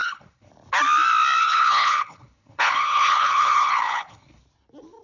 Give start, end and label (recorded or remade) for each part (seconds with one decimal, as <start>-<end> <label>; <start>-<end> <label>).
0.0-0.5 remade; 0.5-1.4 recorded; 1.4-4.4 remade; 4.4-5.0 recorded